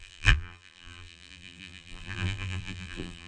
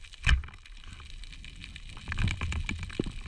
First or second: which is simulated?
first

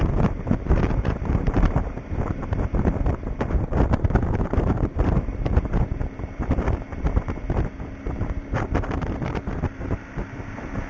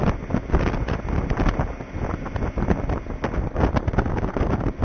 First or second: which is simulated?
first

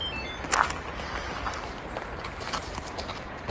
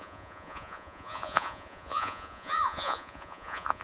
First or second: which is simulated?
second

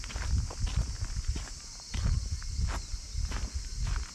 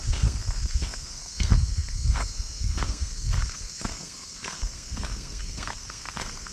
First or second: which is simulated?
second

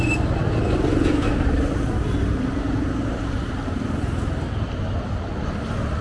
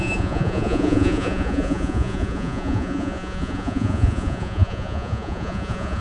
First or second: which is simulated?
second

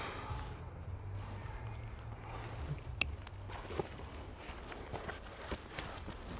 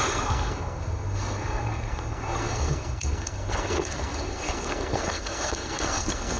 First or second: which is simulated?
second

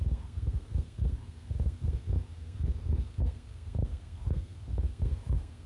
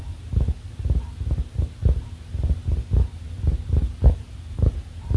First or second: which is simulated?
first